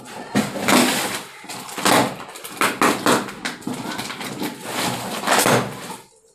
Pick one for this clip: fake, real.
real